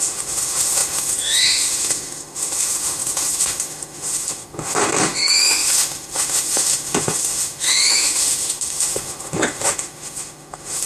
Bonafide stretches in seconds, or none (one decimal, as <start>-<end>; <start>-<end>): none